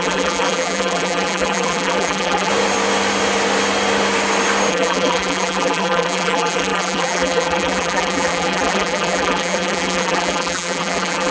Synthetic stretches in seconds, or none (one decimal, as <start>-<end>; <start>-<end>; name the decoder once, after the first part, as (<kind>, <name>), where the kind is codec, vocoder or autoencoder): 0.0-2.5 (vocoder, BigVGAN v2); 4.7-11.3